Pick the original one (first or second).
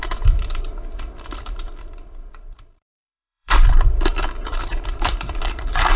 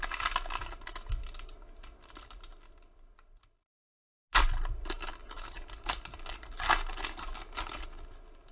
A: second